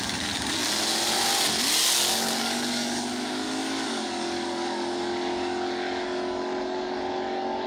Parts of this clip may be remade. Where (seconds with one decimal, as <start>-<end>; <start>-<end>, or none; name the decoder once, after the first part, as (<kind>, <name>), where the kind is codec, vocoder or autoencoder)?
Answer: 0.0-0.6 (codec, DAC); 2.1-7.7